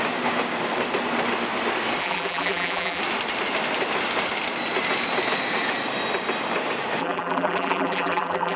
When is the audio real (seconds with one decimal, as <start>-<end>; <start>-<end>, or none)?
0.0-2.0; 3.0-7.0